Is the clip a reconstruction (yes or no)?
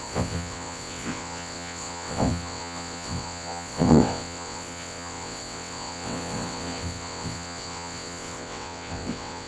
yes